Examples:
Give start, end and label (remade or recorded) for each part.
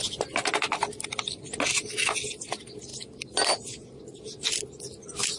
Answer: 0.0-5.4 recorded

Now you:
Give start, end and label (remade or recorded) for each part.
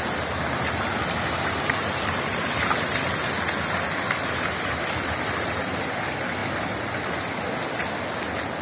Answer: 0.0-8.6 recorded